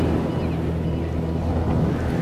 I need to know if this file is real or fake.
real